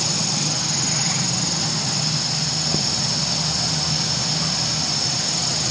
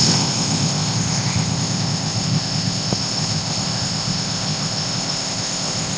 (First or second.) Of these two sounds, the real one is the first